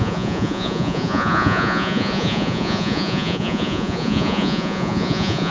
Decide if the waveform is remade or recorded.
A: remade